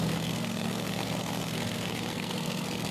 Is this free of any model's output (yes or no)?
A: no